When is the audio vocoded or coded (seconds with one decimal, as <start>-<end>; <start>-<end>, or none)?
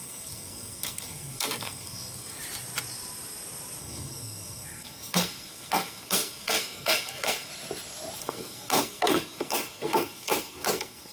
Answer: 0.0-2.4; 3.8-7.5; 8.2-11.1